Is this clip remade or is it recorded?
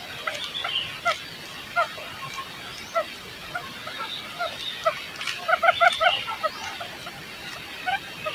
recorded